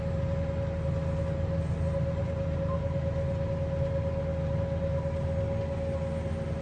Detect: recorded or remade recorded